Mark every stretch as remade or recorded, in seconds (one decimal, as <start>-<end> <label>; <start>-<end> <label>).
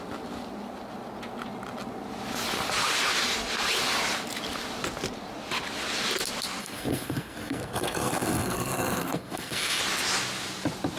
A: 0.0-6.6 recorded; 6.6-9.8 remade; 9.8-11.0 recorded